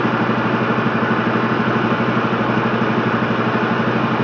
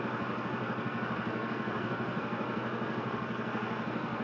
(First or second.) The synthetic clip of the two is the second